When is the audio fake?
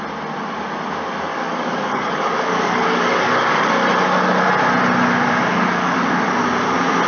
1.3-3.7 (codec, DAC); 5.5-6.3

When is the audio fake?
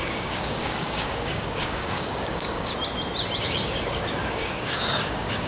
0.0-2.7 (codec, DAC); 3.4-5.5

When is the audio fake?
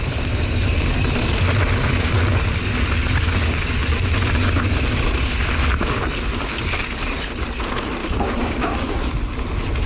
8.0-9.0 (codec, DAC)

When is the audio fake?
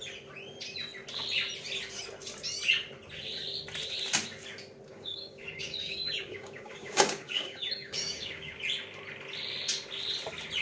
4.9-8.5 (codec, DAC)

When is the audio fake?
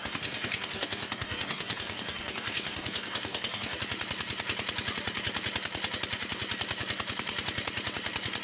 0.0-3.8 (codec, DAC)